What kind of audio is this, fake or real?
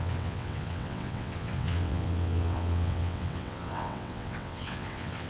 fake